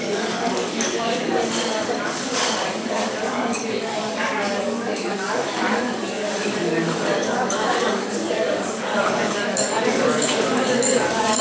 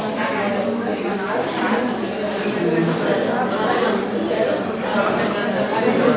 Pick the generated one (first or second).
first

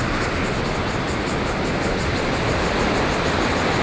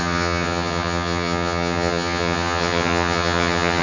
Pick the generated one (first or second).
second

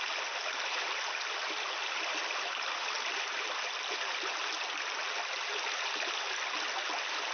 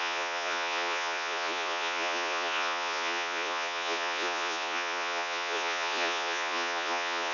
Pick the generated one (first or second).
second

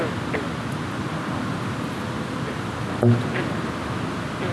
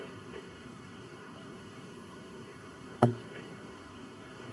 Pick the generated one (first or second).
second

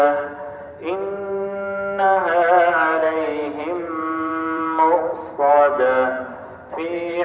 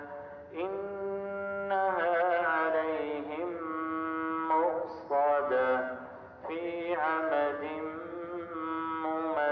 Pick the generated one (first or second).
first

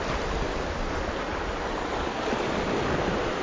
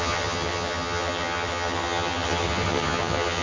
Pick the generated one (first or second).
second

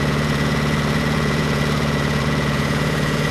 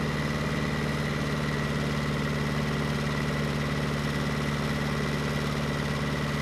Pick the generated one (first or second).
first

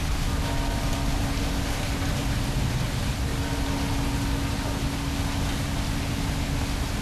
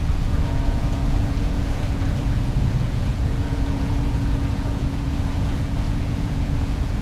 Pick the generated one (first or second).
second